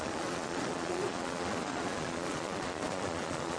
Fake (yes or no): yes